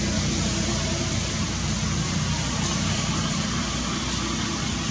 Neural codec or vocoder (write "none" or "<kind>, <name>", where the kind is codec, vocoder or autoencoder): none